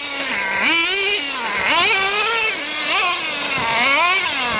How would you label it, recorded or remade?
recorded